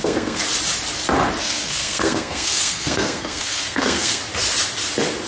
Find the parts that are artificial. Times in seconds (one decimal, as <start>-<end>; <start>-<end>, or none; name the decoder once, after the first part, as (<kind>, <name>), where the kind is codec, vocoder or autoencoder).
0.0-0.4 (codec, SNAC); 1.4-4.2